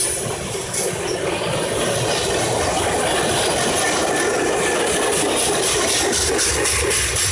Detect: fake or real real